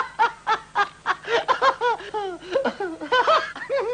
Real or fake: real